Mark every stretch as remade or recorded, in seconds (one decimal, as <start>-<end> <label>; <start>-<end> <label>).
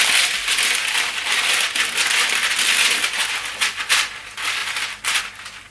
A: 0.0-5.7 recorded